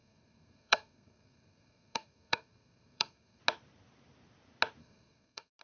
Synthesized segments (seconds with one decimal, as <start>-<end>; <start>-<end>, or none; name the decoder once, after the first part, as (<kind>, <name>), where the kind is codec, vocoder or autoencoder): 0.0-3.4 (codec, SNAC); 4.8-5.6